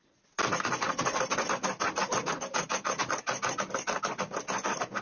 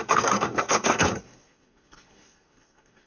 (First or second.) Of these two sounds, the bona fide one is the first